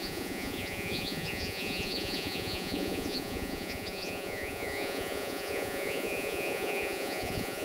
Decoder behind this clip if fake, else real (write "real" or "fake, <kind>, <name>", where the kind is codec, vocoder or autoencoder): fake, vocoder, Vocos